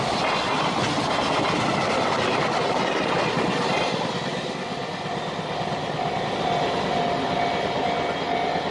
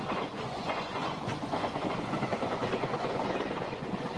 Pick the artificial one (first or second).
second